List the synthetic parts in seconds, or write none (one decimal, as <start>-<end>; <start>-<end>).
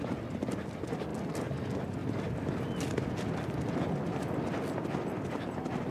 none